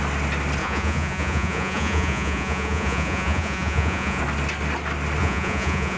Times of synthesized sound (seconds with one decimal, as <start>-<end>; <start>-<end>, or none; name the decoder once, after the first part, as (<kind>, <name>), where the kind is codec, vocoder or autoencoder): 0.6-4.2 (vocoder, Vocos); 5.2-6.0